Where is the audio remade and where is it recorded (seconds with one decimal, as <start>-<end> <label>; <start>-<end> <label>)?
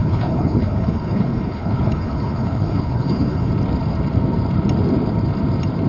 0.0-3.5 remade; 3.5-5.9 recorded